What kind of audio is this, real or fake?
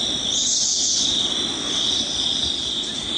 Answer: real